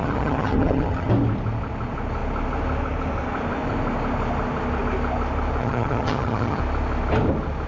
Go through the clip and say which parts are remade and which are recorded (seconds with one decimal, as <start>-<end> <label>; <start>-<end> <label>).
0.0-1.1 remade; 1.1-5.6 recorded; 5.6-6.6 remade; 6.6-7.7 recorded